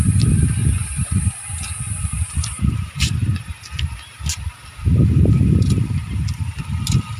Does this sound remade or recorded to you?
recorded